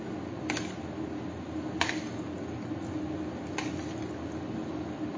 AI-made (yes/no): no